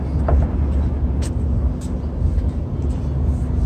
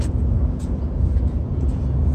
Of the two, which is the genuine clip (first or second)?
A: first